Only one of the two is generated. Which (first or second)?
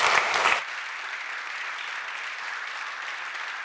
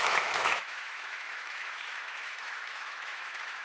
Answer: second